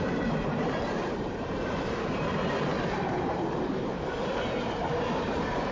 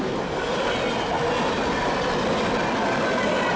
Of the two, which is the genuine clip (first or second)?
second